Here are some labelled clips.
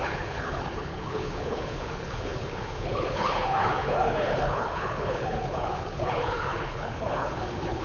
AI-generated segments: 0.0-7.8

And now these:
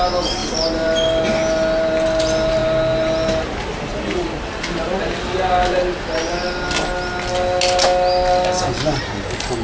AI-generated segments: none

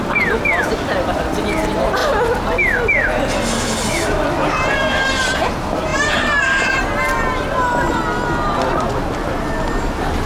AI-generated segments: none

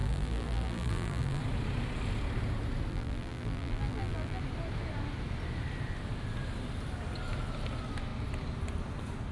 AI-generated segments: 0.0-1.4; 2.9-4.4